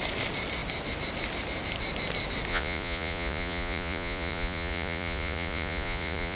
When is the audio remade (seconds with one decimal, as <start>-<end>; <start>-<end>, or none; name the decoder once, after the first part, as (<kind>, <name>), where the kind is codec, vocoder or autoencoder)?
2.5-6.4 (vocoder, Vocos)